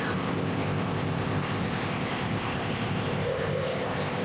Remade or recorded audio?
remade